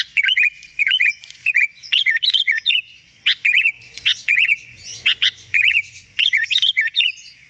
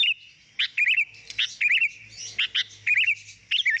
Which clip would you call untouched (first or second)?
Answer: second